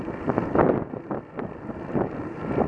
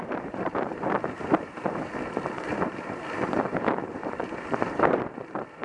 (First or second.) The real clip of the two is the first